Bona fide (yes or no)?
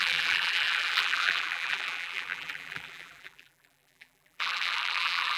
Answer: no